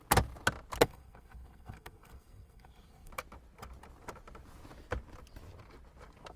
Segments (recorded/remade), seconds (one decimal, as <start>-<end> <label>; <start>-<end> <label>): 0.0-0.8 recorded; 0.8-3.1 remade; 3.1-6.4 recorded

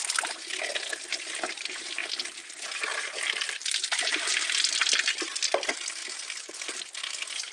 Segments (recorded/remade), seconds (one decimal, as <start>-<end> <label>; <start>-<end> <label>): 0.0-7.5 recorded

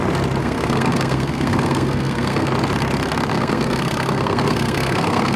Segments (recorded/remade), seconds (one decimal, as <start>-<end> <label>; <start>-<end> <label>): 0.0-0.4 recorded; 0.4-2.5 remade; 2.5-3.3 recorded; 3.3-5.4 remade

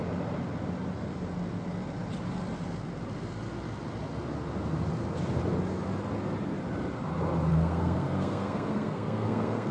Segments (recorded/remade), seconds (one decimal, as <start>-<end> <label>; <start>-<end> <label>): 0.0-7.5 recorded; 7.5-9.7 remade

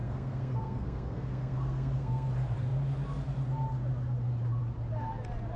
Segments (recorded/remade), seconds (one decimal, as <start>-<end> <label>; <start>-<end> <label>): 0.0-2.3 remade; 2.3-5.6 recorded

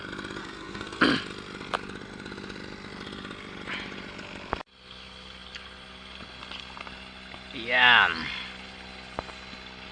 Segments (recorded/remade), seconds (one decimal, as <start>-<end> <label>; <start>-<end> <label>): 0.0-0.4 recorded; 0.4-1.0 remade; 1.0-9.9 recorded

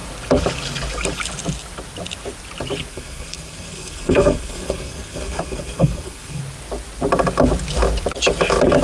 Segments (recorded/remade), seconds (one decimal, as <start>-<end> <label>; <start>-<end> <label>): 0.0-2.9 recorded; 2.9-6.4 remade; 6.4-8.8 recorded

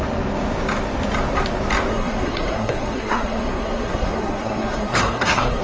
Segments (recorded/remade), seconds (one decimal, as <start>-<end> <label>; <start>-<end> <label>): 0.0-1.9 recorded; 1.9-5.6 remade